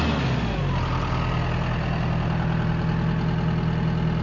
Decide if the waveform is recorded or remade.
recorded